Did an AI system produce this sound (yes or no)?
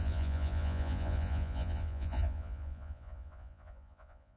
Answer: yes